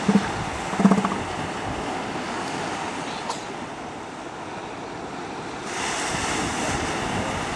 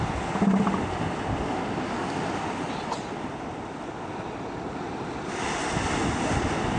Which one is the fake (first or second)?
second